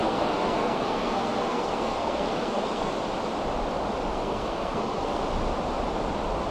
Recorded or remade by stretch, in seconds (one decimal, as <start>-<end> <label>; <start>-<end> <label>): 0.0-2.9 remade; 2.9-4.1 recorded; 4.1-5.2 remade; 5.2-6.5 recorded